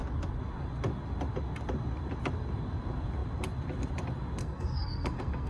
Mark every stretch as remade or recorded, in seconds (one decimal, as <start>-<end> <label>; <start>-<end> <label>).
0.0-4.4 recorded; 4.4-5.5 remade